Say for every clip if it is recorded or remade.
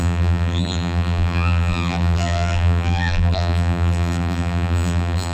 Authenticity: remade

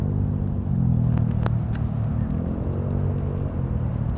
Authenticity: recorded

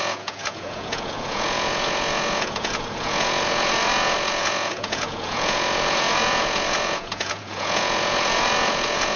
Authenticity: remade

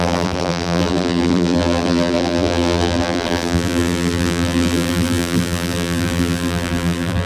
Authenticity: remade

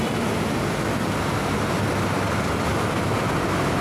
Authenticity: recorded